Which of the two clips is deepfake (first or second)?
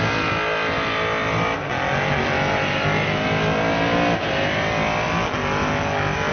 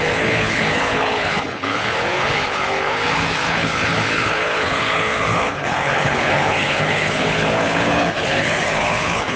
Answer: second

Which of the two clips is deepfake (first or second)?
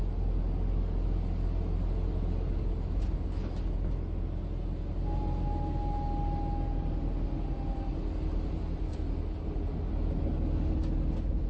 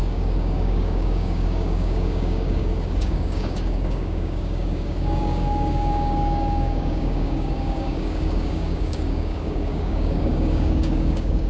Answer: second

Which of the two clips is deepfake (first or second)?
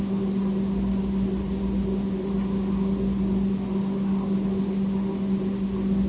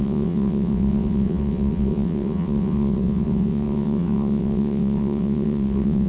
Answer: second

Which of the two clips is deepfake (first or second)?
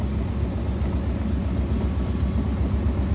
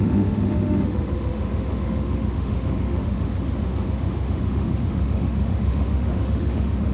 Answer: second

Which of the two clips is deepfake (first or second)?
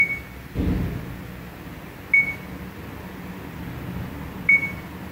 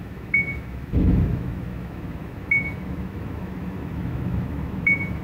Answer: second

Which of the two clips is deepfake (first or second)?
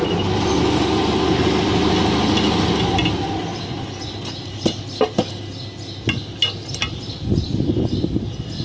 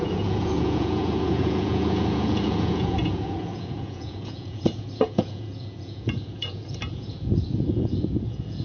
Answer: second